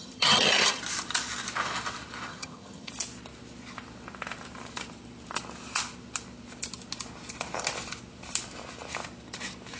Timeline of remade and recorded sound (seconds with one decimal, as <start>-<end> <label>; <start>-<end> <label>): 0.0-0.8 remade; 0.8-2.3 recorded; 2.3-2.9 remade; 2.9-9.8 recorded